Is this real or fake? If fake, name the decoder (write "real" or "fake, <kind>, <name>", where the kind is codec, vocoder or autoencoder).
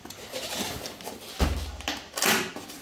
real